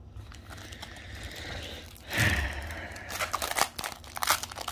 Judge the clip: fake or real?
real